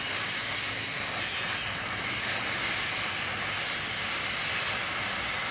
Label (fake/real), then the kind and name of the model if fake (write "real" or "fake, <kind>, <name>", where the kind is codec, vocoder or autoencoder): real